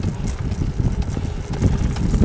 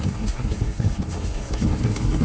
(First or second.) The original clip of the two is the first